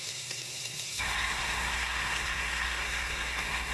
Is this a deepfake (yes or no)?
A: yes